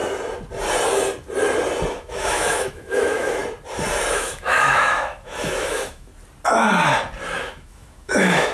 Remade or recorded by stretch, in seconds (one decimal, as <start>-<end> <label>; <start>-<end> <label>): 0.0-1.9 recorded; 1.9-3.4 remade; 3.4-4.1 recorded; 4.1-6.1 remade; 6.1-7.4 recorded; 7.4-8.5 remade